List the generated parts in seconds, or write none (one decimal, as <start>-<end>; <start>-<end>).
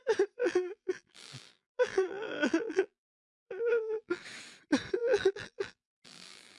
0.4-4.2; 5.0-6.6